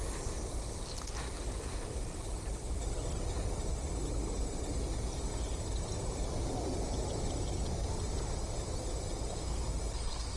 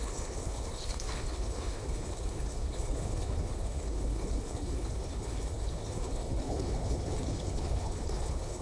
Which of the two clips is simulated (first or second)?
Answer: second